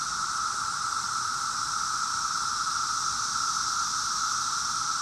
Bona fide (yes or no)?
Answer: yes